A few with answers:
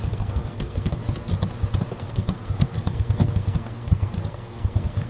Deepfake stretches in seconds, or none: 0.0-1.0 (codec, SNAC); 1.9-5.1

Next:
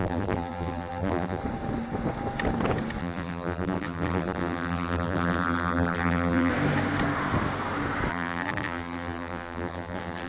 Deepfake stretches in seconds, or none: 0.0-1.4 (vocoder, BigVGAN v2); 3.0-6.5; 8.1-10.3

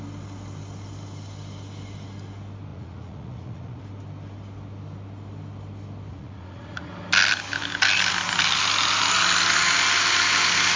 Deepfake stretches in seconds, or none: 2.7-3.8 (vocoder, Vocos); 6.1-6.9

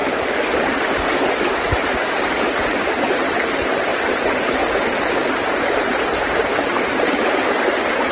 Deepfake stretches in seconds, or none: 1.8-3.9 (vocoder, BigVGAN v2); 4.4-5.2; 5.9-8.1